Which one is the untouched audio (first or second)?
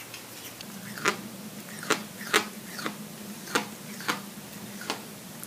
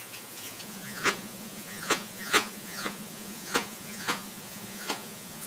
first